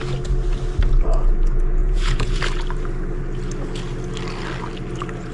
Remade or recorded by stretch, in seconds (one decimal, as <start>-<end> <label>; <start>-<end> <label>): 0.0-1.8 recorded; 1.8-2.4 remade; 2.4-5.3 recorded